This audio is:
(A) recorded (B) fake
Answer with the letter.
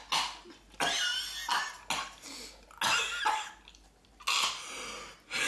A